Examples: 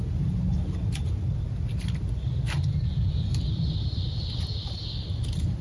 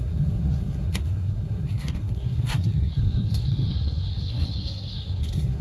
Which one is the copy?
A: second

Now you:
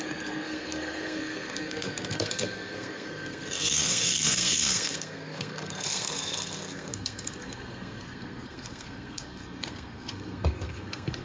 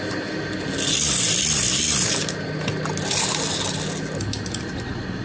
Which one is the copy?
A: first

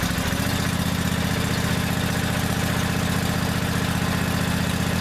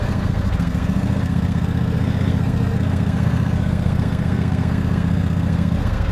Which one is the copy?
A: second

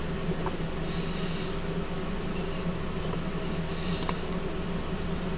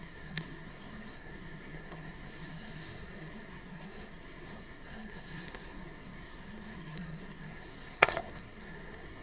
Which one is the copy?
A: second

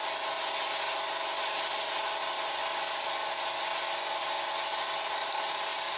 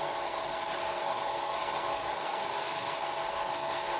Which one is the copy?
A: second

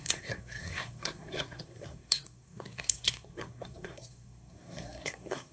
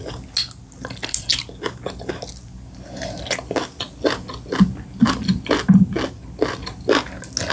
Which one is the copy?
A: first